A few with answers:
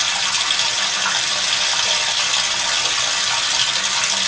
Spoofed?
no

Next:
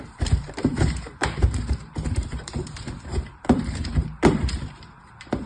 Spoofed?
yes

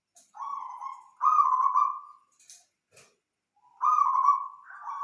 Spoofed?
no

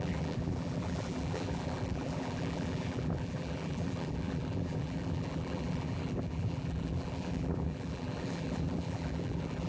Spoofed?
yes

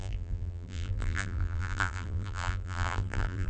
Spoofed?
yes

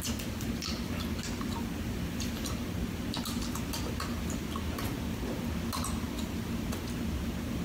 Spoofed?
no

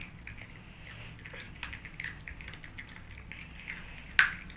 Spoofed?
no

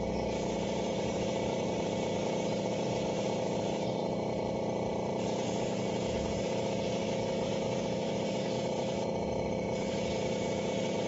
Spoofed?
yes